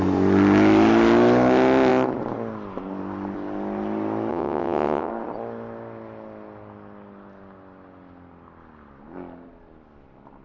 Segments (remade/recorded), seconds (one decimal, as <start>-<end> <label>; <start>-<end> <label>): 0.0-4.3 recorded; 4.3-5.1 remade; 5.1-10.4 recorded